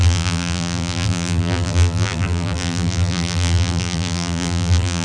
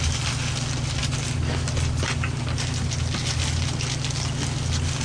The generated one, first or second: first